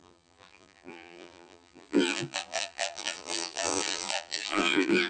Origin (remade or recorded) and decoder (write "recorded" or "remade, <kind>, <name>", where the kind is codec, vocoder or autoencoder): remade, vocoder, BigVGAN v2